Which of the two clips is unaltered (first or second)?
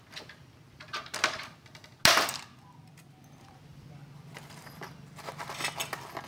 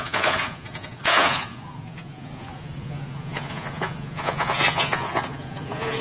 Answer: first